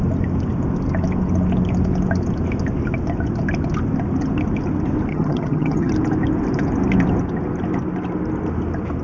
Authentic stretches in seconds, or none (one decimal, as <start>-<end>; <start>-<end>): 0.0-5.1; 5.9-9.0